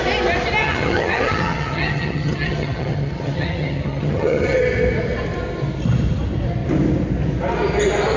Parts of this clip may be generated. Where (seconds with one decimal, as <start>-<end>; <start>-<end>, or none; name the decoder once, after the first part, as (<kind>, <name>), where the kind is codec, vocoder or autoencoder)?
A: 0.6-4.6 (vocoder, HiFi-GAN)